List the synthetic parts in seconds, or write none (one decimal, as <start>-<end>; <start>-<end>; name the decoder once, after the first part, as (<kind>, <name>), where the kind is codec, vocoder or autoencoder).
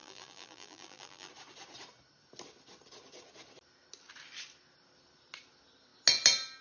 0.0-1.3 (vocoder, BigVGAN v2)